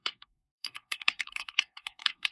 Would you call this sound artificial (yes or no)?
yes